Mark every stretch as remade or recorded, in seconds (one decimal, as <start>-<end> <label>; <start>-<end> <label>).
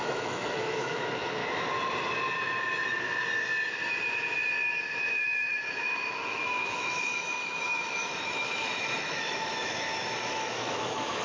0.0-1.4 remade; 1.4-4.8 recorded; 4.8-11.2 remade